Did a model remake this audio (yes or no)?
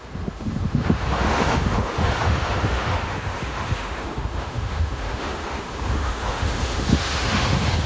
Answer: yes